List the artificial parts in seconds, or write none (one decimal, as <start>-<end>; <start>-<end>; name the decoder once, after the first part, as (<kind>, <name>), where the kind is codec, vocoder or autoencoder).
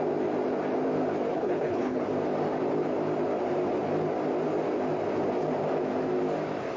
1.3-2.0 (codec, HILCodec)